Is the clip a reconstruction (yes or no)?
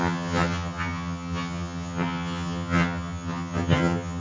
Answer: yes